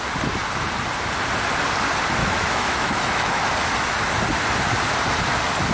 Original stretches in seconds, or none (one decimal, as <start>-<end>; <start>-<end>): 0.0-2.2; 3.5-5.7